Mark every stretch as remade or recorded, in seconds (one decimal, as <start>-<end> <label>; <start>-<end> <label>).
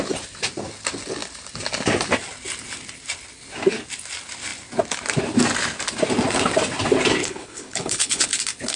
0.0-7.2 recorded; 7.2-8.4 remade; 8.4-8.8 recorded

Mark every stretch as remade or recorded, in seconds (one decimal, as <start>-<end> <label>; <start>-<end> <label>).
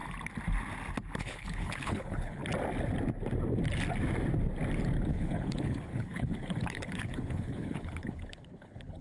0.0-1.2 recorded; 1.2-2.4 remade; 2.4-5.1 recorded; 5.1-9.0 remade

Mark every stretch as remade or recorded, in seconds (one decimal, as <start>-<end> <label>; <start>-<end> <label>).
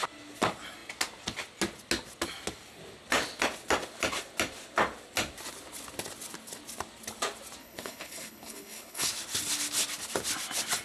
0.0-7.6 recorded; 7.6-9.1 remade; 9.1-10.8 recorded